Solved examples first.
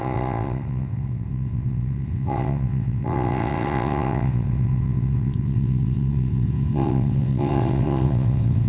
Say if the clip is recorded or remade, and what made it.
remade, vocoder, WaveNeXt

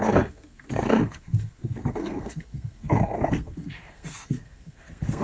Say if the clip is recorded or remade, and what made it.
remade, codec, SNAC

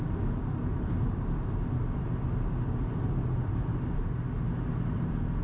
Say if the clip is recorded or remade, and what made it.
recorded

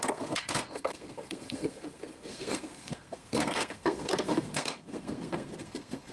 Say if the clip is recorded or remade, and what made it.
remade, codec, SNAC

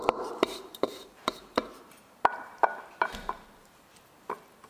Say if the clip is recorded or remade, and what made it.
remade, vocoder, BigVGAN v2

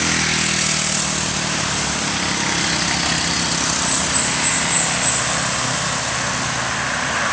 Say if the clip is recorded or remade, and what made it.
recorded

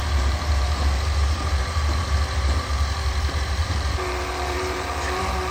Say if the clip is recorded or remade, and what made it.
remade, vocoder, BigVGAN v2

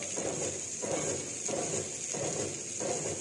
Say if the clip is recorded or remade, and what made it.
recorded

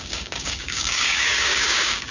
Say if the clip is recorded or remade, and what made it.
remade, codec, DAC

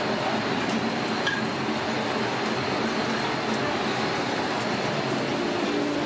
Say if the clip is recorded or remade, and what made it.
recorded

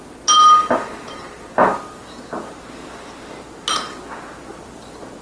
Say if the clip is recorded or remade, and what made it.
recorded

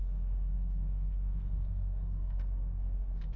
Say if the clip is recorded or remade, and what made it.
remade, codec, SNAC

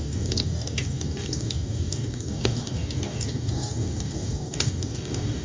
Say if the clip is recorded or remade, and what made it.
remade, codec, DAC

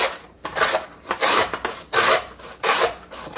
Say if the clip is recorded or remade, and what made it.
recorded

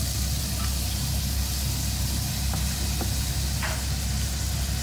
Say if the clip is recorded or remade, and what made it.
recorded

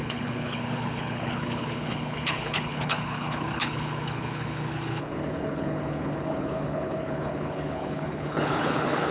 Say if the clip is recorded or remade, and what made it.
remade, codec, HILCodec